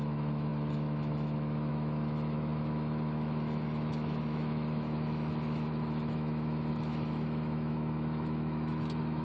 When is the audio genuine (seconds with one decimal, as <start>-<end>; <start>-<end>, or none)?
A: none